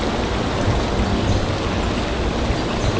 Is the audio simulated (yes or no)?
no